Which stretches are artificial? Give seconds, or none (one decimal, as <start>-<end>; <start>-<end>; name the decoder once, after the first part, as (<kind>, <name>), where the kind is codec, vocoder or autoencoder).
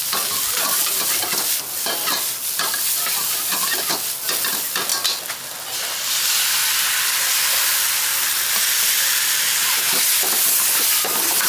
7.7-10.0 (vocoder, BigVGAN v2)